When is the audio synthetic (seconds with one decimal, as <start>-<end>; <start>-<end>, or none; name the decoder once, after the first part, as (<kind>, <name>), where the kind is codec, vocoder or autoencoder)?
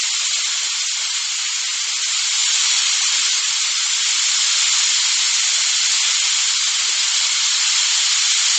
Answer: 2.4-3.6 (vocoder, BigVGAN v2)